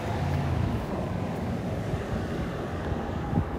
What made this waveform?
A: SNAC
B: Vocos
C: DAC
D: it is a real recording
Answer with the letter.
C